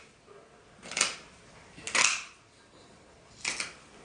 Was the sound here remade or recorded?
recorded